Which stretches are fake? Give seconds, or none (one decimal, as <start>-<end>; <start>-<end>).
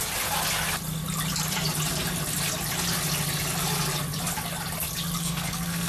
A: 5.2-5.9